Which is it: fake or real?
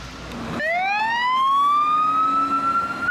real